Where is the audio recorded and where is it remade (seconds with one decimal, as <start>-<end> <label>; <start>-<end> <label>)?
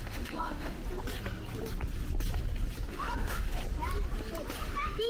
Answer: 0.0-0.8 remade; 0.8-2.9 recorded; 2.9-3.6 remade; 3.6-4.6 recorded; 4.6-5.1 remade